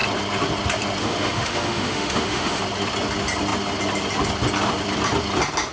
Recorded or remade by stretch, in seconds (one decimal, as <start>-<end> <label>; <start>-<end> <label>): 0.0-1.0 recorded; 1.0-2.6 remade; 2.6-5.7 recorded